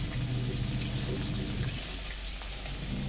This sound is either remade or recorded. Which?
recorded